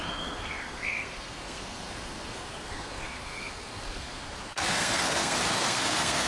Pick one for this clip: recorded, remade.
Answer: remade